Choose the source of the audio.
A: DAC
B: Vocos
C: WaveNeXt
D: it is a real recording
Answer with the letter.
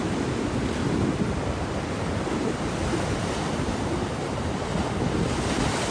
D